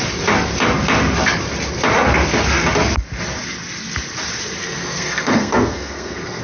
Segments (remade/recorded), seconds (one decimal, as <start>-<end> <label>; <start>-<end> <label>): 0.0-4.6 recorded; 4.6-6.4 remade